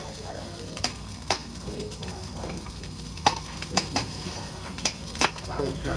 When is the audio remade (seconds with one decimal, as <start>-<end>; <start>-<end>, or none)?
0.0-6.0